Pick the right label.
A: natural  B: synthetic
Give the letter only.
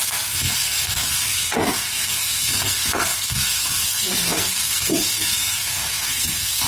B